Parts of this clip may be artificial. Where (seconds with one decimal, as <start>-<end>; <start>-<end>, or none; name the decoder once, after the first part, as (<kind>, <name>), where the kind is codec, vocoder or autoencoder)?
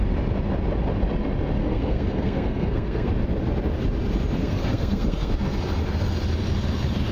1.6-3.1 (codec, SNAC); 4.4-5.3